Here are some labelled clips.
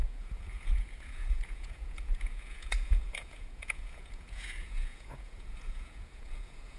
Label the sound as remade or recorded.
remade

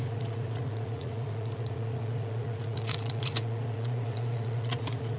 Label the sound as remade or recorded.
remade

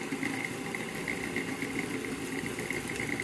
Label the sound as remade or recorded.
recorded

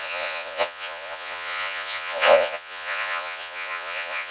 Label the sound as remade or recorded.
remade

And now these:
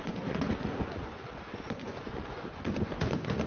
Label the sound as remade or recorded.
remade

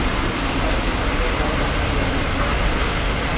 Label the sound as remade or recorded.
recorded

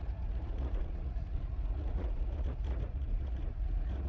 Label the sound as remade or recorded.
remade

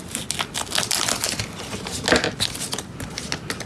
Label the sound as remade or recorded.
recorded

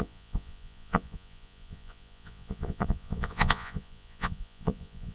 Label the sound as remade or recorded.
remade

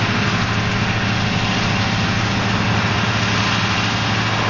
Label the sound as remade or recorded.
recorded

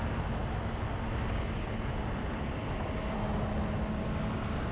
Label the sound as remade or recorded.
recorded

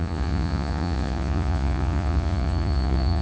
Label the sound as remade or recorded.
remade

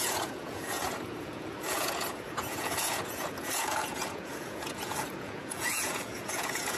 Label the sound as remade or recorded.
remade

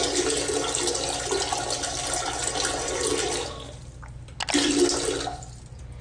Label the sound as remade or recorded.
recorded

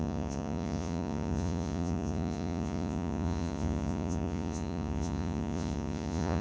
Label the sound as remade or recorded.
remade